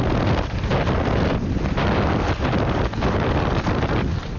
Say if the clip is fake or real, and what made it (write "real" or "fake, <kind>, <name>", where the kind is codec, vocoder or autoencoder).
real